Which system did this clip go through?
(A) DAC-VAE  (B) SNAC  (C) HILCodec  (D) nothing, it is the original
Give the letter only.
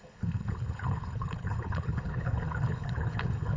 C